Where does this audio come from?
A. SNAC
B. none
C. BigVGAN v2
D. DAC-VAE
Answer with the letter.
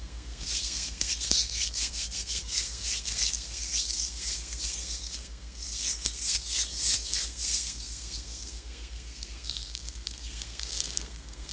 A